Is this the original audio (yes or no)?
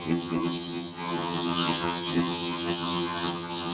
no